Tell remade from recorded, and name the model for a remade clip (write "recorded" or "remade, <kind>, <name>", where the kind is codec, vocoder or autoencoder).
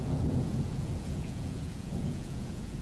remade, vocoder, Vocos